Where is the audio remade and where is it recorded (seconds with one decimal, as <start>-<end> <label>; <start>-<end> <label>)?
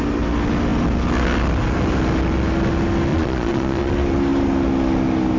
0.0-3.1 recorded; 3.1-3.9 remade; 3.9-5.4 recorded